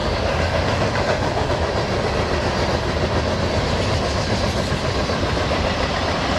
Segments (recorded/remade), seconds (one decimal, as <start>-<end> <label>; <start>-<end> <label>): 0.0-1.5 remade; 1.5-6.4 recorded